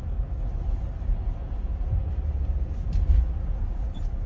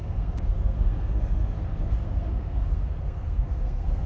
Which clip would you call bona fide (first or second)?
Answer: first